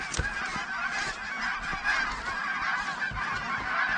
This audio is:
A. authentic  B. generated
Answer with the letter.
A